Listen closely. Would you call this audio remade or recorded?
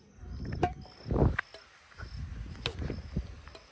recorded